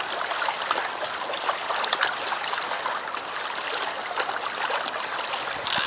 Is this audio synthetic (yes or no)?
yes